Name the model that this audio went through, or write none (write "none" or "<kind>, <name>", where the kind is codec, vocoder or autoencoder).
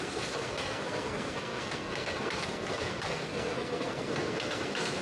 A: codec, SNAC